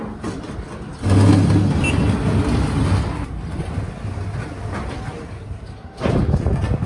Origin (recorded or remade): recorded